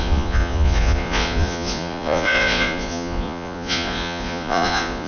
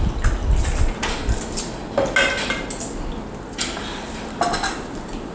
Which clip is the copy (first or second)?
first